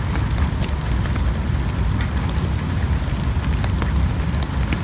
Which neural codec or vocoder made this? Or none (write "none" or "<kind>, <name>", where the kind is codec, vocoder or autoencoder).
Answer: none